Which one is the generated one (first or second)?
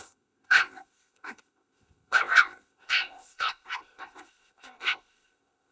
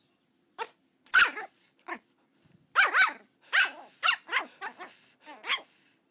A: first